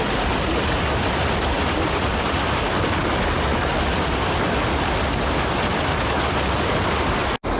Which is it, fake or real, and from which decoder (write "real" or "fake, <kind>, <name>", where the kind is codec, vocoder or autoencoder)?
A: real